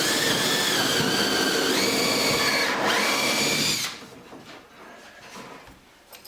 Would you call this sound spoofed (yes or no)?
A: no